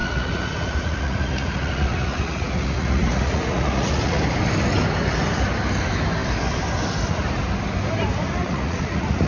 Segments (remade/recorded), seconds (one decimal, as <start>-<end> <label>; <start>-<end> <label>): 0.0-4.2 remade; 4.2-8.4 recorded; 8.4-9.3 remade